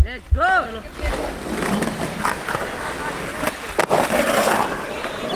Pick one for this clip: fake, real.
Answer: real